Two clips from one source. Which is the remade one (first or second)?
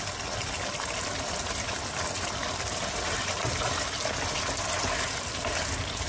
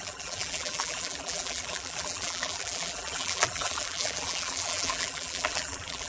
second